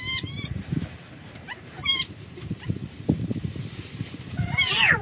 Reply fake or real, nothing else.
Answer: fake